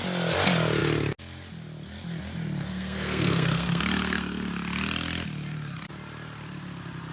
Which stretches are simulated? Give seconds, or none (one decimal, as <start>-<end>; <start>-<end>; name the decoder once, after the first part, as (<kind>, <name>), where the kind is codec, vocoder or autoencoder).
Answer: 2.7-4.5 (codec, SNAC)